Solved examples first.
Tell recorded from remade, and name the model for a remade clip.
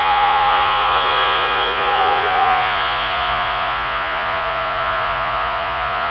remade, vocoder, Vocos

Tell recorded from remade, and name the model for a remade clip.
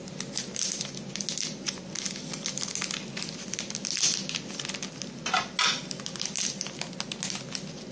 recorded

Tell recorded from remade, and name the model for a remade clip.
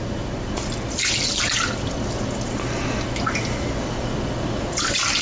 recorded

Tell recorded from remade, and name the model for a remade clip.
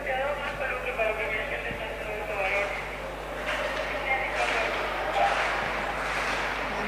recorded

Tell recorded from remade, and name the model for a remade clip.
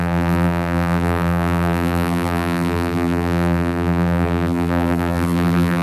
remade, vocoder, BigVGAN v2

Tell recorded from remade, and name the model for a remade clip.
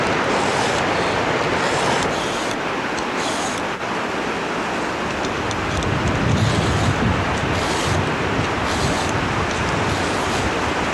remade, vocoder, BigVGAN v2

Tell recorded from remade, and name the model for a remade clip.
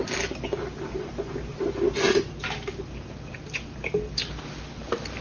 recorded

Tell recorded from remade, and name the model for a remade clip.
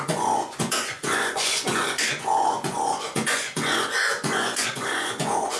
remade, vocoder, Vocos